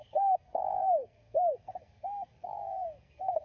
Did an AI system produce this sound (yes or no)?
yes